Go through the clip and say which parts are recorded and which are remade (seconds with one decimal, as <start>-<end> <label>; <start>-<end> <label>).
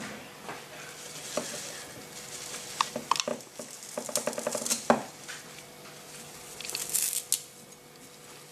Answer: 0.0-8.5 recorded